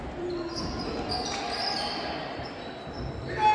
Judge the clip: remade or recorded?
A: recorded